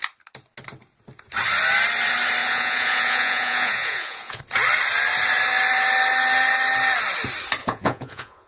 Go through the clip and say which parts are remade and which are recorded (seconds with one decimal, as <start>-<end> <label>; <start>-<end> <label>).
0.0-2.4 recorded; 2.4-4.4 remade; 4.4-7.6 recorded; 7.6-8.5 remade

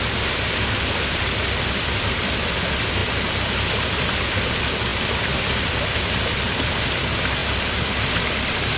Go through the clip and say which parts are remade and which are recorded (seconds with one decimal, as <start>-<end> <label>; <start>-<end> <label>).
0.0-3.0 remade; 3.0-3.5 recorded; 3.5-8.8 remade

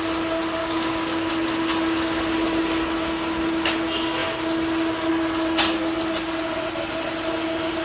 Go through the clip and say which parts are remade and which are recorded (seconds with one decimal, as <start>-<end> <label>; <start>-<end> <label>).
0.0-0.6 recorded; 0.6-1.3 remade; 1.3-7.8 recorded

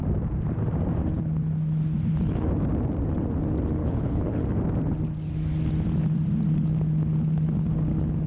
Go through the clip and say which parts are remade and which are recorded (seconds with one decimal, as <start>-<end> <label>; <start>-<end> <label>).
0.0-3.8 recorded; 3.8-4.4 remade; 4.4-8.3 recorded

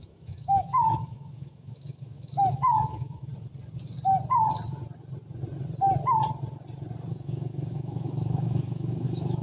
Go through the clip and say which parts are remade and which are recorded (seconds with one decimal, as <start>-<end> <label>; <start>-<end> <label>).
0.0-3.3 remade; 3.3-7.1 recorded; 7.1-9.4 remade

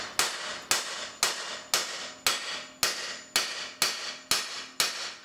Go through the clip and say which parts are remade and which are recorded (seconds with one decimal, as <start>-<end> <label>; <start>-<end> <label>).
0.0-5.2 recorded

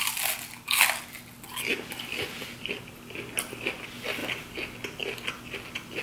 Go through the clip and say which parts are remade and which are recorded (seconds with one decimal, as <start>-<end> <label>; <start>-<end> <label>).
0.0-6.0 recorded